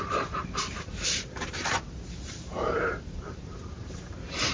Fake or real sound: fake